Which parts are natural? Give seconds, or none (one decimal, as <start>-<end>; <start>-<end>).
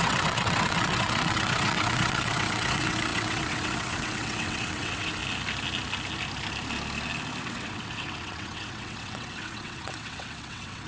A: 5.2-7.4